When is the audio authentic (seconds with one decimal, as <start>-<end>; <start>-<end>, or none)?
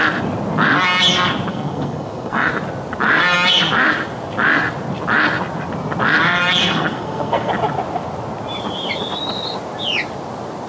0.0-1.5; 2.5-6.6; 7.5-10.7